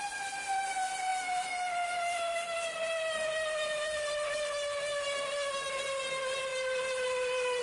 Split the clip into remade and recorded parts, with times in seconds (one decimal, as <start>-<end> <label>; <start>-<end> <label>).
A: 0.0-7.6 recorded